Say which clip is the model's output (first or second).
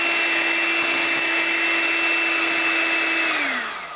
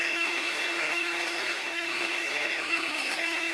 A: second